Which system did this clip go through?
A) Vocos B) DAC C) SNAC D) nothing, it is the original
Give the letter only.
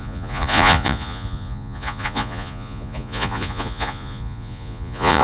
A